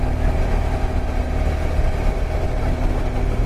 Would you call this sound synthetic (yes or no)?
no